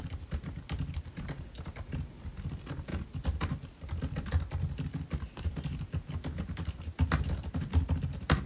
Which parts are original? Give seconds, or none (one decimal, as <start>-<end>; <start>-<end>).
0.0-8.5